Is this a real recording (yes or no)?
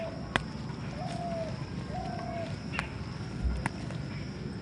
yes